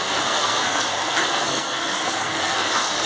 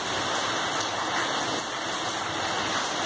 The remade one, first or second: first